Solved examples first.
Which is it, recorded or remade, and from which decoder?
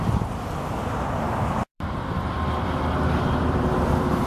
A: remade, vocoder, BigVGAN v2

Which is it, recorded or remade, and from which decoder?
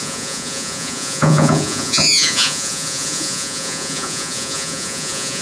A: remade, vocoder, Vocos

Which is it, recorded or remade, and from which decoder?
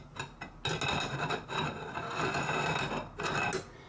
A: recorded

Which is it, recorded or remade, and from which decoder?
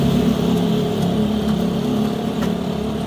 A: recorded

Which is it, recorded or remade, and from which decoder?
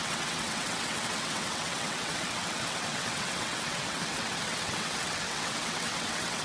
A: remade, vocoder, WaveNeXt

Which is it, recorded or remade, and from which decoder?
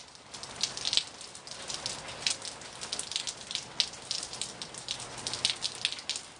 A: recorded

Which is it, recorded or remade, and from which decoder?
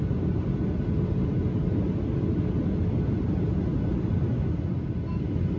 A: recorded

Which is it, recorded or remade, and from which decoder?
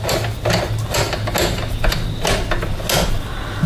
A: recorded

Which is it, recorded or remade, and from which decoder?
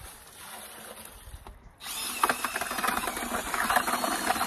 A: recorded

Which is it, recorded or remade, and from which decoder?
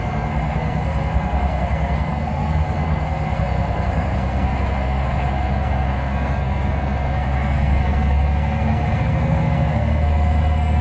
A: remade, codec, SNAC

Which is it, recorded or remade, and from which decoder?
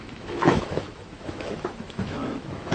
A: remade, autoencoder, DAC-VAE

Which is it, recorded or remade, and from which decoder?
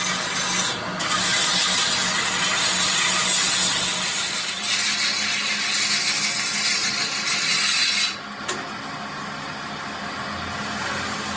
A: recorded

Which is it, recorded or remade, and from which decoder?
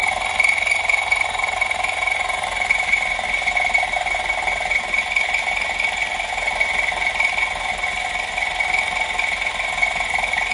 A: recorded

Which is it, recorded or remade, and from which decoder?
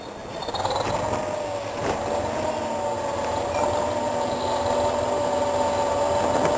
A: recorded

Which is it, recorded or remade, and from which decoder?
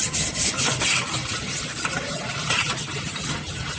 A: recorded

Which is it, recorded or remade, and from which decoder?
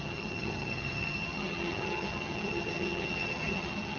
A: remade, vocoder, HiFi-GAN